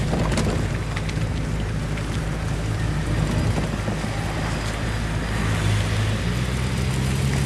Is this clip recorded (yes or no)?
yes